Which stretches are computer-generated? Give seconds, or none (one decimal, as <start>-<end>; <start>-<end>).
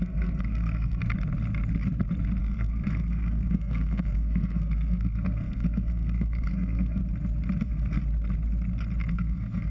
0.0-1.0; 2.4-7.0; 7.6-8.0; 9.1-9.7